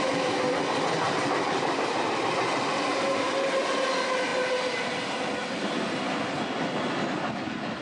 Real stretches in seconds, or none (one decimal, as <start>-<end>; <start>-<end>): 0.0-7.8